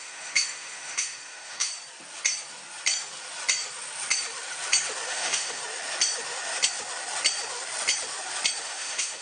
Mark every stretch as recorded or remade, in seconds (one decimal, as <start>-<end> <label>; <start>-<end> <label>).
0.0-1.7 remade; 1.7-5.1 recorded; 5.1-5.6 remade; 5.6-8.6 recorded; 8.6-9.2 remade